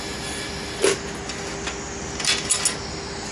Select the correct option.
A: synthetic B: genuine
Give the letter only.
B